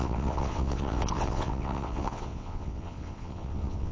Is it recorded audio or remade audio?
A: remade